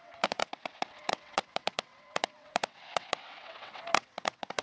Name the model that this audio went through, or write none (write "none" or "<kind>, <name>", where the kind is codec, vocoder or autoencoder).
vocoder, WaveNeXt